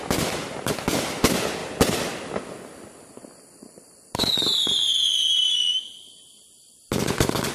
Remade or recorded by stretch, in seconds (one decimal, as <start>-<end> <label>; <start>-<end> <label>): 0.0-7.5 recorded